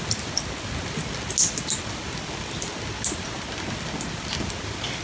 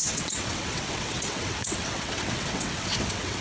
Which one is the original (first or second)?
first